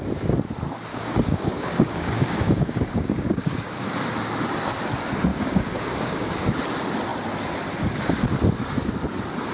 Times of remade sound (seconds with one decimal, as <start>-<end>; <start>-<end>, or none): 0.9-3.7; 5.3-6.3